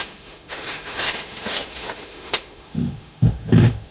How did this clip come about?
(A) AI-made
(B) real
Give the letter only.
A